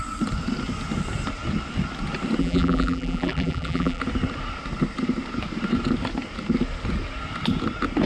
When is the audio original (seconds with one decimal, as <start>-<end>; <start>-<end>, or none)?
0.0-2.4; 4.0-8.1

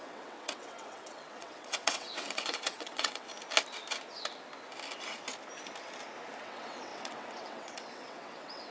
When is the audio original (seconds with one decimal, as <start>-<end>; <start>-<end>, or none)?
3.3-6.4

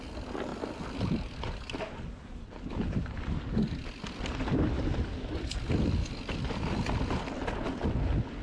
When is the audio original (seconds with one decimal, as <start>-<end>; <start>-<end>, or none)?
0.0-0.5; 4.2-8.4

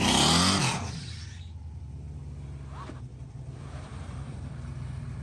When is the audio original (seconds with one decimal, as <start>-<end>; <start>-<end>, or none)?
0.0-3.9; 4.5-5.2

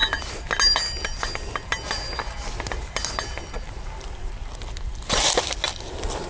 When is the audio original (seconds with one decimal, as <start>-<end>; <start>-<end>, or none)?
0.0-6.3

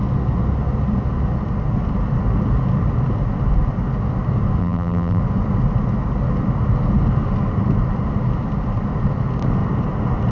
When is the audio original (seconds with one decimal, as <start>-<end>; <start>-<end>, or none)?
0.0-4.6; 5.2-10.3

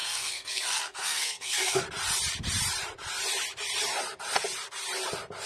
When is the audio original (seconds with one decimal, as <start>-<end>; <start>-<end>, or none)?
1.8-5.5